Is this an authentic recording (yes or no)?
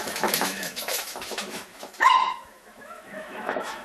no